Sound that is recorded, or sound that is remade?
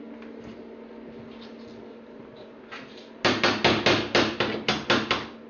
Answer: recorded